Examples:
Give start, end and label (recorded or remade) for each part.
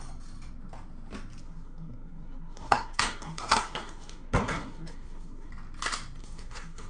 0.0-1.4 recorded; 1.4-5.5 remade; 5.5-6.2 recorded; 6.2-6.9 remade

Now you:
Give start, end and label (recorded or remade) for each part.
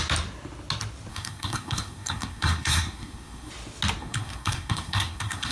0.0-1.1 recorded; 1.1-3.5 remade; 3.5-4.0 recorded; 4.0-5.5 remade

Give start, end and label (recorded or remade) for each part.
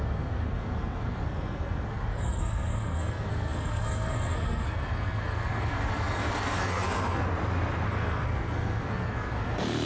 0.0-7.2 remade; 7.2-7.9 recorded; 7.9-9.9 remade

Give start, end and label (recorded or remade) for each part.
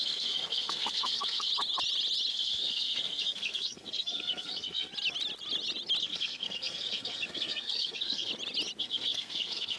0.0-1.5 remade; 1.5-2.3 recorded; 2.3-4.9 remade; 4.9-6.0 recorded; 6.0-8.3 remade; 8.3-8.8 recorded; 8.8-9.8 remade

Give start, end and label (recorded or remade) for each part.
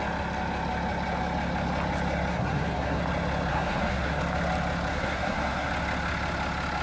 0.0-2.3 recorded; 2.3-3.0 remade; 3.0-3.5 recorded; 3.5-4.2 remade; 4.2-4.9 recorded; 4.9-5.7 remade; 5.7-6.8 recorded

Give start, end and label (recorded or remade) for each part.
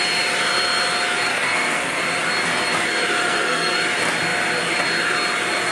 0.0-1.3 recorded; 1.3-2.0 remade; 2.0-3.2 recorded; 3.2-3.8 remade; 3.8-5.7 recorded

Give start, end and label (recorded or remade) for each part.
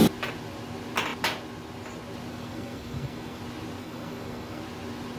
0.0-2.3 recorded; 2.3-3.4 remade; 3.4-3.8 recorded; 3.8-4.6 remade; 4.6-5.2 recorded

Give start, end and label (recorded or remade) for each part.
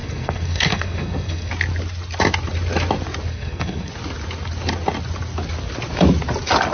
0.0-1.5 remade; 1.5-3.3 recorded; 3.3-3.9 remade; 3.9-6.7 recorded